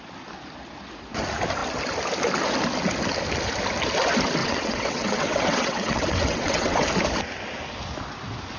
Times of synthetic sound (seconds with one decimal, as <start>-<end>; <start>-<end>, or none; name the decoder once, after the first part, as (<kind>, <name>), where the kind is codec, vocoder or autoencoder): 4.4-6.9 (vocoder, WaveNeXt)